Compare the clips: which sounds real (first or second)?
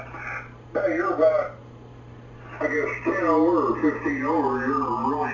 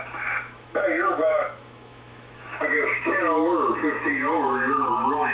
first